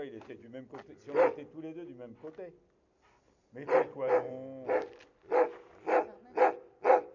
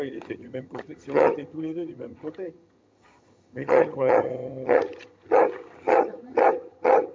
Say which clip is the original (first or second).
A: first